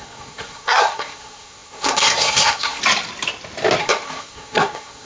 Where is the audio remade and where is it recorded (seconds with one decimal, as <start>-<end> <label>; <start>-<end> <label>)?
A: 0.0-2.8 remade; 2.8-3.8 recorded; 3.8-5.1 remade